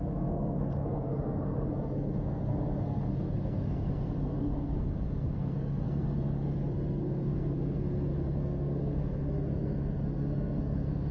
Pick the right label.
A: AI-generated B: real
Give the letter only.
A